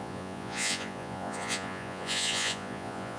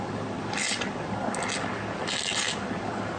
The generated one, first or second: first